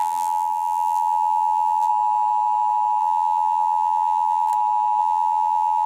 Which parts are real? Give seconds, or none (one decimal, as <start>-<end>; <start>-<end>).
1.9-3.0; 4.5-5.0